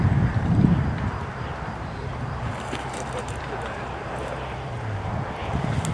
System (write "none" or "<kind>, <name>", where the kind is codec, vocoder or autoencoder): vocoder, BigVGAN v2